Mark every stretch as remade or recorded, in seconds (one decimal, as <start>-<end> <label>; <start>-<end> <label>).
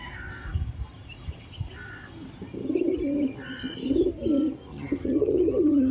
0.0-4.7 recorded; 4.7-5.9 remade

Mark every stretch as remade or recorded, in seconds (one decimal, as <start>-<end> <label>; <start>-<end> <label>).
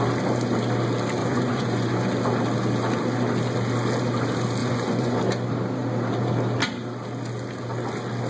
0.0-1.2 recorded; 1.2-2.1 remade; 2.1-4.6 recorded; 4.6-5.2 remade; 5.2-8.3 recorded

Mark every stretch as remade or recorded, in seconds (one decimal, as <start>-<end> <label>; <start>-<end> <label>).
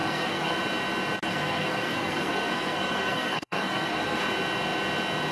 0.0-0.6 remade; 0.6-1.3 recorded; 1.3-4.2 remade; 4.2-5.3 recorded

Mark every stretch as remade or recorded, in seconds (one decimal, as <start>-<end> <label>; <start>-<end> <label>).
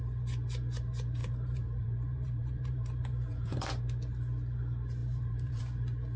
0.0-1.2 recorded; 1.2-3.8 remade; 3.8-5.0 recorded; 5.0-5.6 remade; 5.6-6.2 recorded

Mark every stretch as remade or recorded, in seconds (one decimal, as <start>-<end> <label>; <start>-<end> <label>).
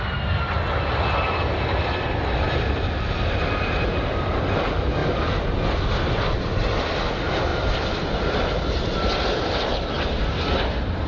0.0-11.1 recorded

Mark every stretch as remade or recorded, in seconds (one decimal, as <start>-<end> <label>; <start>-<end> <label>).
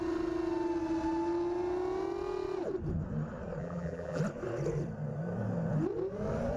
0.0-3.6 recorded; 3.6-4.2 remade; 4.2-6.6 recorded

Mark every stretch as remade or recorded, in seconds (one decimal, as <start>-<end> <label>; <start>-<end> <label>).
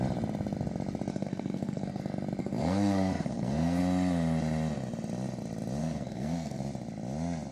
0.0-1.1 recorded; 1.1-2.0 remade; 2.0-2.4 recorded; 2.4-3.8 remade; 3.8-5.8 recorded; 5.8-6.6 remade; 6.6-7.5 recorded